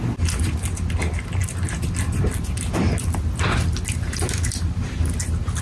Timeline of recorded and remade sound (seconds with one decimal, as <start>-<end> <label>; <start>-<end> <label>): 0.0-5.6 recorded